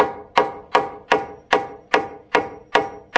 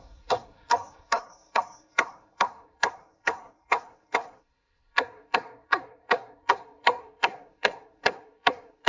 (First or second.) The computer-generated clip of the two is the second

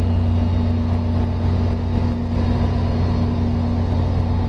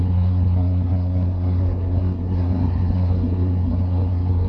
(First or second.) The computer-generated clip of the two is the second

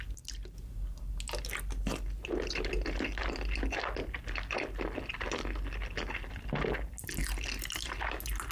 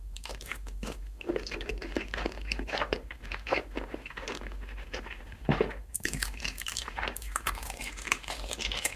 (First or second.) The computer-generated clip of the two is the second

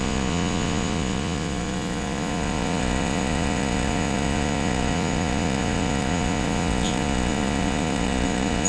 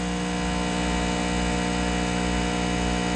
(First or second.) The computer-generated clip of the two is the first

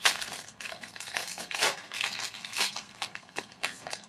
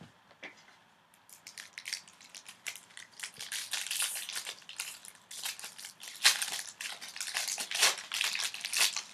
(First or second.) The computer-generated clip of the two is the first